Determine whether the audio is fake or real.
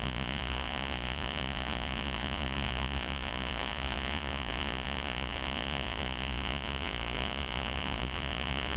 fake